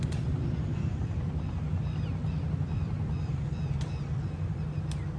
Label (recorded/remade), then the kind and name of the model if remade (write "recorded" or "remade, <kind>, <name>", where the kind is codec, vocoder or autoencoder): recorded